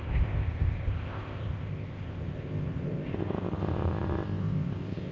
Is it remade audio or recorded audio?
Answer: remade